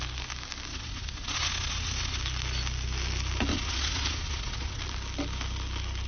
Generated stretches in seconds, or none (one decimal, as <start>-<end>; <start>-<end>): 0.7-2.2; 3.5-4.8